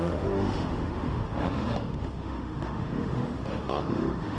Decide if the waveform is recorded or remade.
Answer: remade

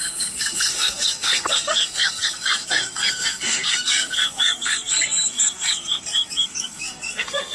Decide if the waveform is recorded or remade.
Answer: remade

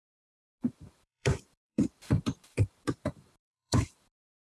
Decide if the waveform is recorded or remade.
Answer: remade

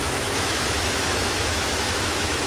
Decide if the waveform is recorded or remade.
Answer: remade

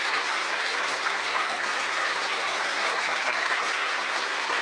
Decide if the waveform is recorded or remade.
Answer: remade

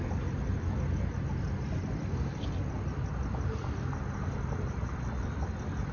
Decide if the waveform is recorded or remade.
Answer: recorded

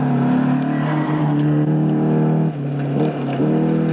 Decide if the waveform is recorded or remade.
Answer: recorded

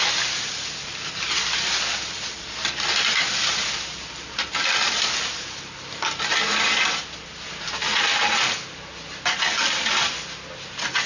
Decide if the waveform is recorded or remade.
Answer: recorded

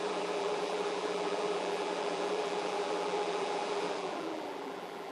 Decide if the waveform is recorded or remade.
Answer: remade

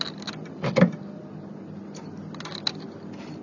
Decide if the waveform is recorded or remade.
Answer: recorded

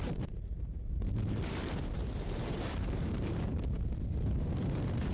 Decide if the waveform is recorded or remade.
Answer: remade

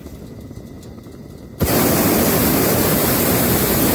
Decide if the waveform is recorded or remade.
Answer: recorded